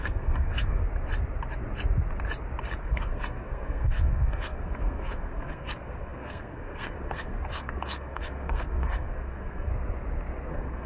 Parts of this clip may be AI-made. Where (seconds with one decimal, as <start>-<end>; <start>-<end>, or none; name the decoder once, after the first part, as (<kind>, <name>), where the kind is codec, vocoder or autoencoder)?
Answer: 0.0-0.8 (codec, SNAC); 2.8-9.7; 10.5-10.9